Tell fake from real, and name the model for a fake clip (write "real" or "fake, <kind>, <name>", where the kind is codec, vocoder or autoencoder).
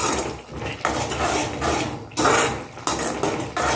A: real